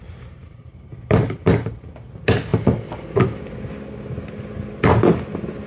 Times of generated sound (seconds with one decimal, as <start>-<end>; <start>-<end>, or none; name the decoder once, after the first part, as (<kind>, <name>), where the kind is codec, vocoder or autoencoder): none